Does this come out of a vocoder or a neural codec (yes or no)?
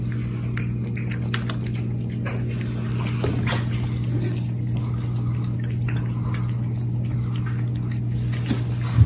no